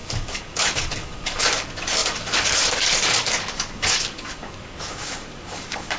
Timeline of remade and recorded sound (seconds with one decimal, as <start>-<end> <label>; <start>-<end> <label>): 0.0-6.0 remade